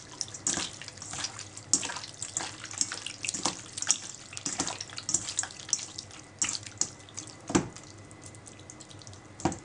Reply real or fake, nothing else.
real